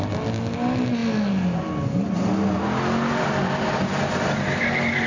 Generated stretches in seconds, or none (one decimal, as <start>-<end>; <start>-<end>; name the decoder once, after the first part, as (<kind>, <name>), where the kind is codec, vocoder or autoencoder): none